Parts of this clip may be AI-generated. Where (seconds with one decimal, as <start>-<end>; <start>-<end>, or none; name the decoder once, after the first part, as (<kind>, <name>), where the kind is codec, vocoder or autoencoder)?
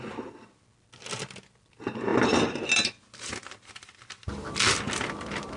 none